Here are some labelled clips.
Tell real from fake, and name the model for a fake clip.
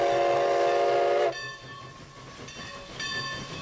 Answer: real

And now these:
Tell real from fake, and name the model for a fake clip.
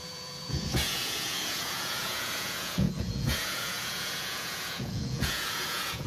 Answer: fake, vocoder, Vocos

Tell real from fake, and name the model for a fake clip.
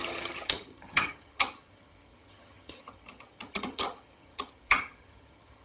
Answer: fake, vocoder, HiFi-GAN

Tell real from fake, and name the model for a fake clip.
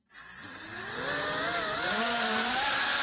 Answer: real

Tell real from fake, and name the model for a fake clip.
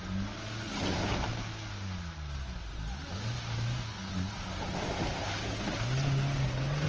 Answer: real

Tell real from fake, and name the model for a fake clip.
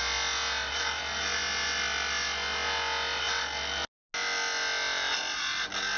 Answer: real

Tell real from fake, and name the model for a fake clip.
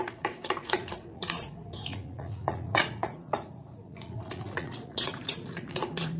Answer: fake, vocoder, Vocos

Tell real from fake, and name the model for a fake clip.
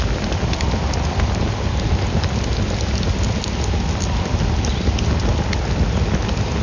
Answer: real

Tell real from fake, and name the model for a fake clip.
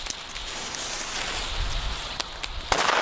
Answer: real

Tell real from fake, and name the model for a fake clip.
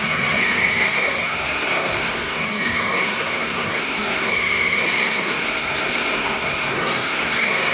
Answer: fake, codec, SNAC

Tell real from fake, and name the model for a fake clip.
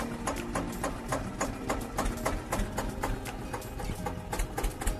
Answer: real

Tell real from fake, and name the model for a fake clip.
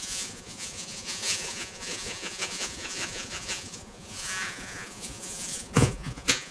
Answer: fake, vocoder, Vocos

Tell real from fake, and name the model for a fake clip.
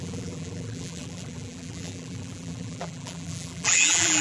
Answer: fake, vocoder, BigVGAN v2